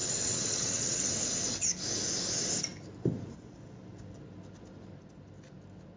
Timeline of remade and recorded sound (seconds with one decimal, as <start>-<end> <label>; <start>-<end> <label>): 0.0-1.1 remade; 1.1-6.0 recorded

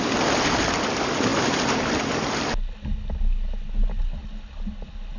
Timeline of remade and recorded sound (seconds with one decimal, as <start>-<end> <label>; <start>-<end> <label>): 0.0-5.2 recorded